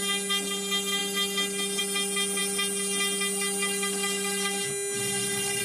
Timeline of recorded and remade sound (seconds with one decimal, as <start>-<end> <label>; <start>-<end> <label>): 0.0-5.6 recorded